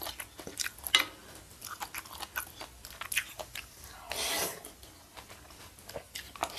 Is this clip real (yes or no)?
yes